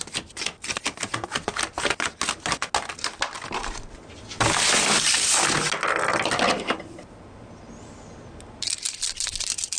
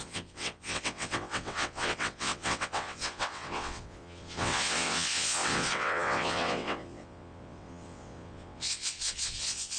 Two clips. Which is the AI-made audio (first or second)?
second